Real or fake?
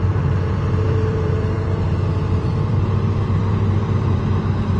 fake